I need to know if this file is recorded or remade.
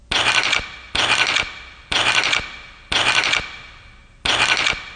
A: recorded